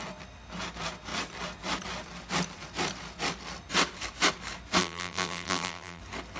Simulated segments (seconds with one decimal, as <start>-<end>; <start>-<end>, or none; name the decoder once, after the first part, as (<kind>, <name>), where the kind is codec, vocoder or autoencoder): 4.8-6.0 (vocoder, BigVGAN v2)